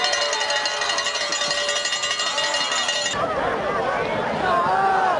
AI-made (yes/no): no